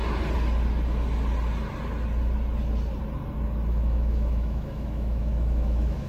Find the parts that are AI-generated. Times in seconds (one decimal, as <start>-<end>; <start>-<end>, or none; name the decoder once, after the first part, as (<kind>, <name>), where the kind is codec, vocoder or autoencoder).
3.7-6.1 (autoencoder, DAC-VAE)